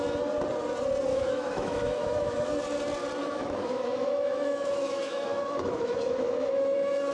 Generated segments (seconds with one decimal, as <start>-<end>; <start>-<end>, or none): 1.1-2.5; 3.2-7.1